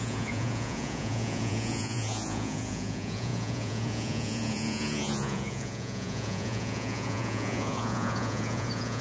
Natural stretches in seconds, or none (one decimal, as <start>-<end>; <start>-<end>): none